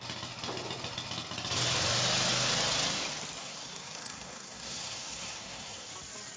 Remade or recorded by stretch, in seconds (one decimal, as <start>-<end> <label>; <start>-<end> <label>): 0.0-3.4 recorded; 3.4-5.9 remade; 5.9-6.4 recorded